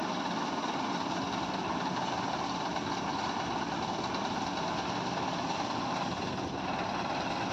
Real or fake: real